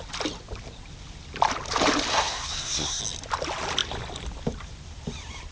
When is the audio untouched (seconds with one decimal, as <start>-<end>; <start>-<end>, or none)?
0.0-2.1; 3.0-5.5